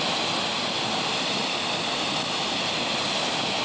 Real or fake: real